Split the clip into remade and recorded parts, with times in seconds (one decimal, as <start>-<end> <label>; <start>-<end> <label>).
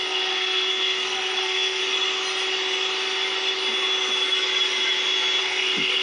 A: 0.0-1.8 remade; 1.8-5.4 recorded; 5.4-6.0 remade